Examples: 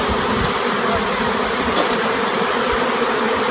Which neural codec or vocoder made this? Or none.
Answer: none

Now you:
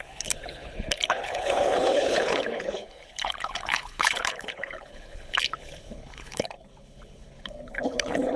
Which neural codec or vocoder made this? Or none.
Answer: codec, HILCodec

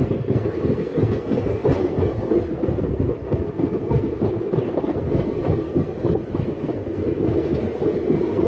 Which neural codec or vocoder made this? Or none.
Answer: codec, SNAC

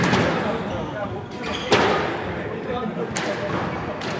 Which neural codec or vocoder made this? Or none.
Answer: none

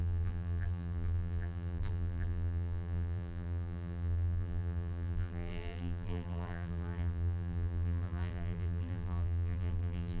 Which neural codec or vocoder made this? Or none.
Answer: vocoder, BigVGAN v2